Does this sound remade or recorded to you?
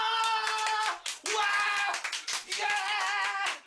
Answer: recorded